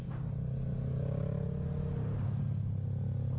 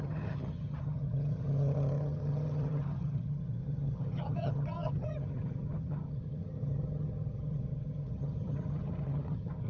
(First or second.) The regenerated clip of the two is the second